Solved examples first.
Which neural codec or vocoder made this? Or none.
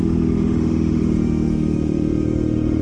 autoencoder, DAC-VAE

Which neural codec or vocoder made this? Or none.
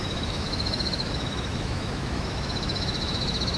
autoencoder, DAC-VAE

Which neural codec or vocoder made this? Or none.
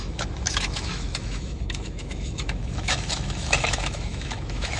autoencoder, DAC-VAE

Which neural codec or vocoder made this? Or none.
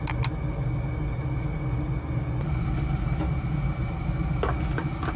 none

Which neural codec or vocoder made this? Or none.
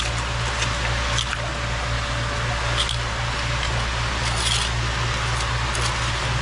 none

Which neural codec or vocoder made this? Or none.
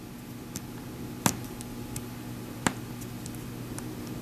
none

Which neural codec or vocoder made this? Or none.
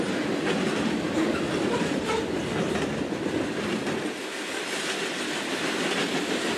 none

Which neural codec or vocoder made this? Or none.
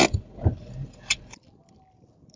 none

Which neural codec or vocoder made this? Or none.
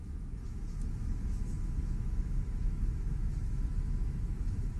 autoencoder, DAC-VAE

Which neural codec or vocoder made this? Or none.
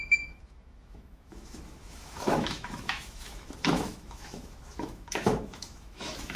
autoencoder, DAC-VAE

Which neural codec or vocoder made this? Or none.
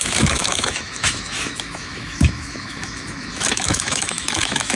autoencoder, DAC-VAE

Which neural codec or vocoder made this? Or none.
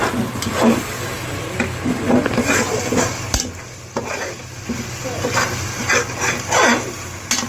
none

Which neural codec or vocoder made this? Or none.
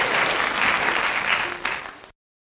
none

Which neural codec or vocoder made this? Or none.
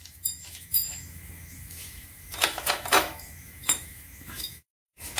autoencoder, DAC-VAE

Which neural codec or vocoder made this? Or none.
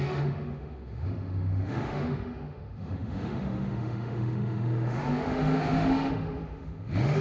autoencoder, DAC-VAE